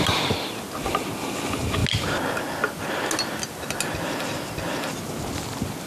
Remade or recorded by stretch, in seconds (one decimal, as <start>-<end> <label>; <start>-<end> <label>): 0.0-5.9 recorded